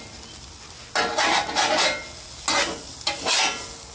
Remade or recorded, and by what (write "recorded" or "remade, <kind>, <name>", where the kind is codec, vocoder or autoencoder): recorded